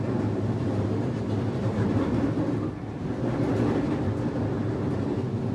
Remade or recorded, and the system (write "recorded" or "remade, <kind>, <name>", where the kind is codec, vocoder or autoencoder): recorded